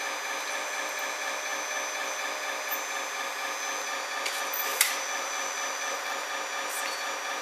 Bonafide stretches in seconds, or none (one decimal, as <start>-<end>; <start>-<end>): 0.0-4.7; 6.3-7.4